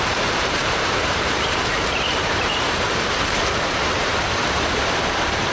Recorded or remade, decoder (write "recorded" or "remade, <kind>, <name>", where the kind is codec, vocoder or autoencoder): remade, vocoder, BigVGAN v2